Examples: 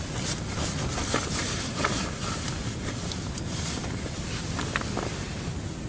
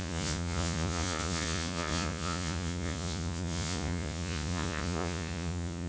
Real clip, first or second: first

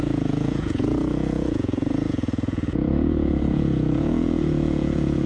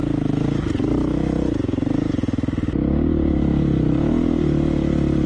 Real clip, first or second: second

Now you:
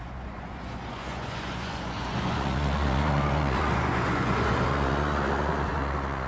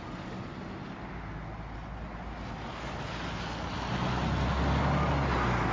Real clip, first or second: second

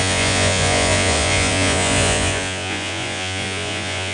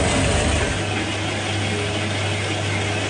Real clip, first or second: second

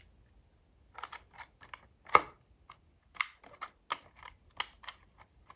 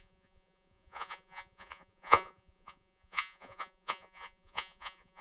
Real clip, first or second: first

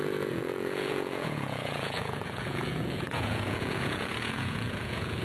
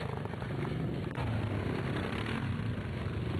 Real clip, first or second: second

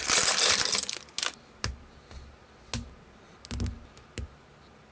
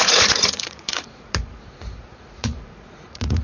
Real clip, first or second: first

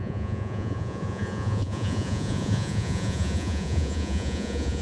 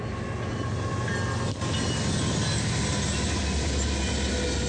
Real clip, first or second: second